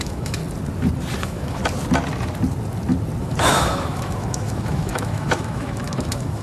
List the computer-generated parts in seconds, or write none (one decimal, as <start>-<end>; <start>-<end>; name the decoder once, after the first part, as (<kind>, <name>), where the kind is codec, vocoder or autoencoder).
0.0-0.4 (autoencoder, DAC-VAE); 1.2-1.6; 3.2-6.4